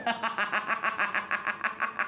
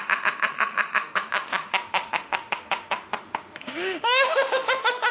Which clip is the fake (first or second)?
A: second